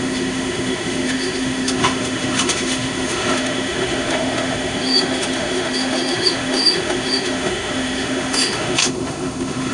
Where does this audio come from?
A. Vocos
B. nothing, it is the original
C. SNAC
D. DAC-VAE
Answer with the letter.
D